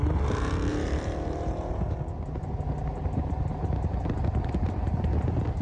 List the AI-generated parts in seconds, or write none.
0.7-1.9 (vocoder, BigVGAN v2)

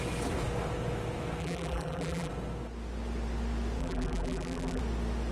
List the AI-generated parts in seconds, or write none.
1.4-2.3 (vocoder, BigVGAN v2); 3.8-4.8

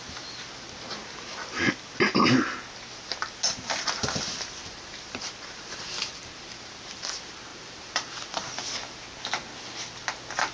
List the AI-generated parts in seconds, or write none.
4.6-6.8 (vocoder, BigVGAN v2); 7.5-8.2

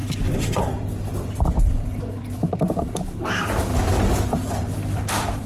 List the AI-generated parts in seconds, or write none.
0.0-3.7 (vocoder, BigVGAN v2); 5.1-5.5

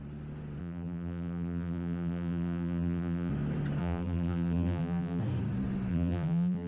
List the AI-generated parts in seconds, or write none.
0.6-3.3 (vocoder, BigVGAN v2); 3.8-5.2; 5.9-6.7